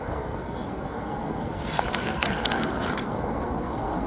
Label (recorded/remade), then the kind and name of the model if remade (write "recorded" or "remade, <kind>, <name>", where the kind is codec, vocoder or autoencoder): remade, codec, SNAC